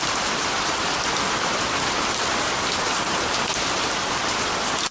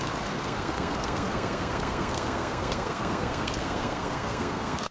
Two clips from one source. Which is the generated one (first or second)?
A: second